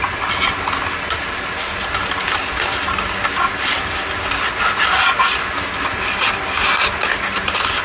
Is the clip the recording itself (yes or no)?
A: yes